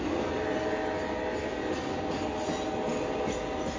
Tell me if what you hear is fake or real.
real